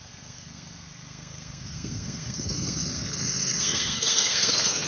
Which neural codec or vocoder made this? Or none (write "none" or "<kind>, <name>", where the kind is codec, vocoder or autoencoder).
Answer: codec, SNAC